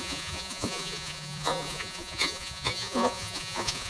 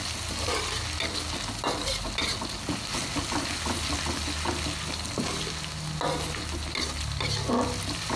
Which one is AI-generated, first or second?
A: first